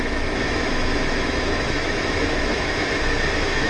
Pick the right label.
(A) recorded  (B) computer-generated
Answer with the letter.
B